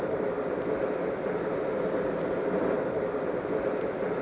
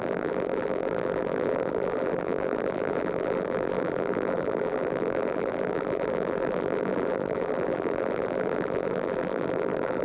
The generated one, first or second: second